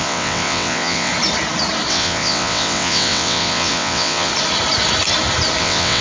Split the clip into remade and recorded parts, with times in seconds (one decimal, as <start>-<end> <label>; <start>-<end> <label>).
0.0-1.1 remade; 1.1-1.9 recorded; 1.9-4.3 remade; 4.3-5.6 recorded; 5.6-6.0 remade